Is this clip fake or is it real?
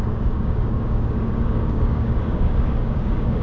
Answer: fake